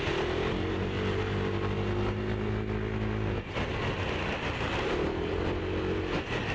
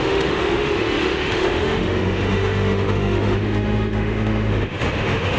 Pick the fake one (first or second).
second